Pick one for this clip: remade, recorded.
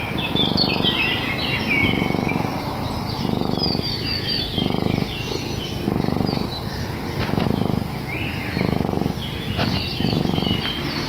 recorded